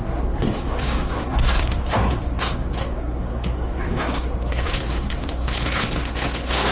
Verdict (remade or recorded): remade